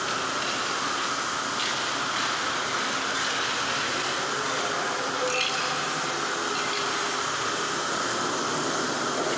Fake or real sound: real